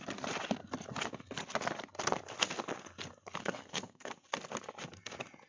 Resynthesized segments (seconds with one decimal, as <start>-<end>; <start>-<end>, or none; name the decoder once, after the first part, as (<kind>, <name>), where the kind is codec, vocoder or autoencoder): 3.4-4.1 (codec, SNAC)